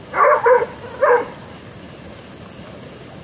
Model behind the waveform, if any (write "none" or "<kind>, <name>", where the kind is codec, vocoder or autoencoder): none